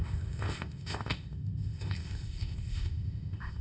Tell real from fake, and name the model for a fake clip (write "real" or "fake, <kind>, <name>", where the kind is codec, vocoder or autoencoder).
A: fake, codec, ZipCodec